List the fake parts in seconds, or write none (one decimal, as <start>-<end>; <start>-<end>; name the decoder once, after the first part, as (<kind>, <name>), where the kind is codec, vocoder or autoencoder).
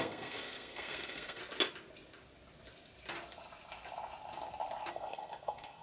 0.0-1.4 (codec, SNAC); 4.9-5.8